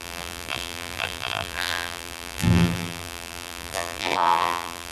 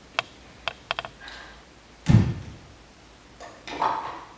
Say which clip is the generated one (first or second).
first